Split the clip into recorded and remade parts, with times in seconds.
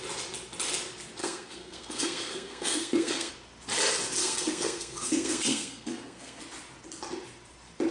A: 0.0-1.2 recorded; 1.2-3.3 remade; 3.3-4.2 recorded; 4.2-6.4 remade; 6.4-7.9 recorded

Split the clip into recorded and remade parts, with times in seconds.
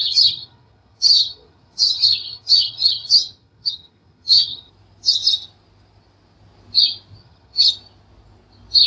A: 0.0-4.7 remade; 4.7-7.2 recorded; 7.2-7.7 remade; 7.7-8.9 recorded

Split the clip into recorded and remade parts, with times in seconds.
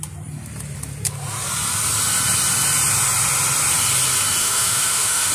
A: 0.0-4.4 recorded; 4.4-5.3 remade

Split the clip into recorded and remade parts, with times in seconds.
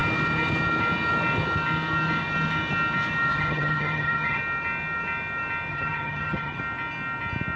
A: 0.0-3.3 recorded; 3.3-4.4 remade; 4.4-5.7 recorded; 5.7-6.6 remade; 6.6-7.6 recorded